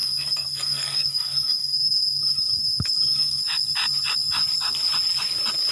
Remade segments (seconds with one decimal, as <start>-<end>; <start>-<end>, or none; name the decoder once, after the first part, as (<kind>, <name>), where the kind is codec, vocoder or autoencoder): 0.0-3.4 (codec, SNAC)